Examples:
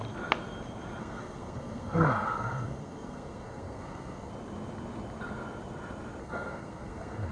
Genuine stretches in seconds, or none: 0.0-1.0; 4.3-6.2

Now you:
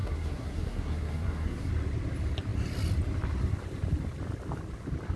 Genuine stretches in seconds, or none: 1.7-5.2